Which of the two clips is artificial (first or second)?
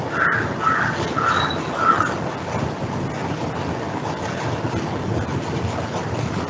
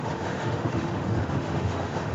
second